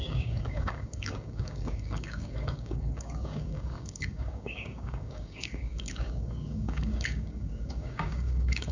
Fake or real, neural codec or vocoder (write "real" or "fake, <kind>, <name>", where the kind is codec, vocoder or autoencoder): fake, codec, DAC